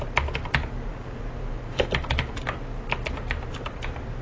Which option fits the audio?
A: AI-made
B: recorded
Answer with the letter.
B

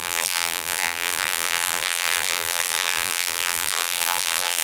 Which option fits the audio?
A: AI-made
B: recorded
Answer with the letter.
A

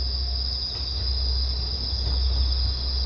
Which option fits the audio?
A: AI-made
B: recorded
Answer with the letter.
B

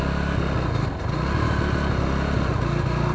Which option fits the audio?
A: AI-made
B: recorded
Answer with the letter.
B